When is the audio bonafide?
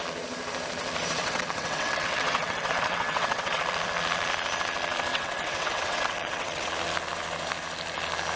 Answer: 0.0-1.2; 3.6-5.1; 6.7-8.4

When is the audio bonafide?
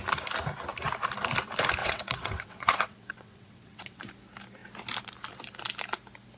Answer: 0.0-1.8; 4.0-6.4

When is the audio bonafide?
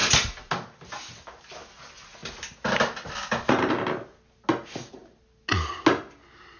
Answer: 0.0-6.6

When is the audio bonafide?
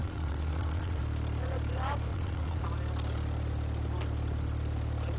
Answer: 1.0-2.1; 2.6-5.2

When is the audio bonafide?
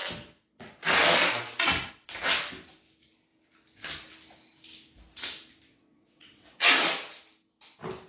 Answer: 0.0-5.7; 6.7-8.1